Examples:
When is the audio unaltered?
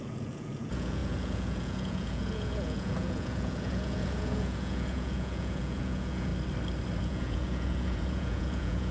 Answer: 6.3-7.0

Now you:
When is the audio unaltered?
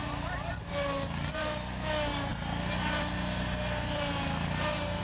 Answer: 0.0-5.0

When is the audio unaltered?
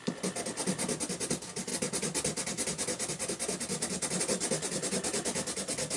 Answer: 0.0-6.0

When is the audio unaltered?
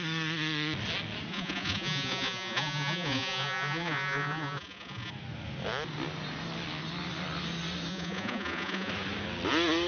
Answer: 0.0-1.3; 5.1-7.9; 8.9-9.9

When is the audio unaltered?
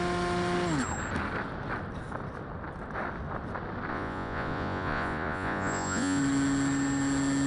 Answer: 0.0-3.9; 6.2-7.5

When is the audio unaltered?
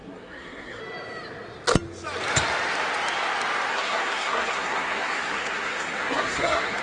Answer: 0.8-3.7